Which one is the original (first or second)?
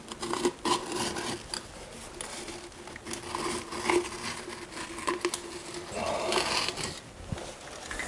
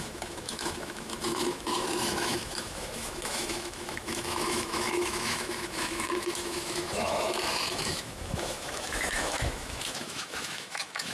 first